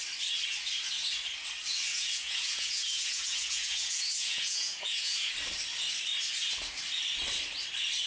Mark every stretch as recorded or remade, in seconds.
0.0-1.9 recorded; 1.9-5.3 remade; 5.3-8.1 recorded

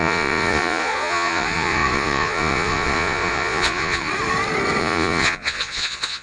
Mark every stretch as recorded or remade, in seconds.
0.0-4.1 remade; 4.1-4.8 recorded; 4.8-6.2 remade